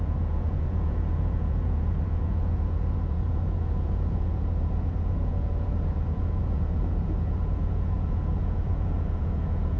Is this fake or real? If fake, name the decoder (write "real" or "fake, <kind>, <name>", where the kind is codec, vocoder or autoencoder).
fake, vocoder, Vocos